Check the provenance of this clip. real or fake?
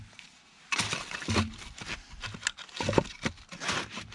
real